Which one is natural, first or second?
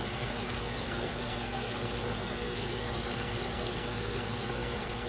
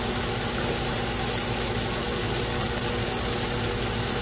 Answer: second